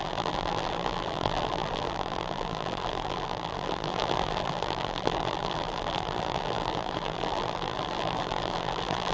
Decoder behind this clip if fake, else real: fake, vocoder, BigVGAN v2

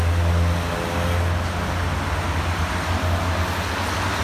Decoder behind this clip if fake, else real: real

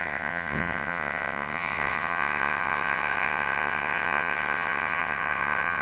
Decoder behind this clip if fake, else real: fake, vocoder, WaveNeXt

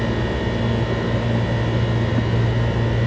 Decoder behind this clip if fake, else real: real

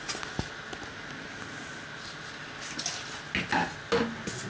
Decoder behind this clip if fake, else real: real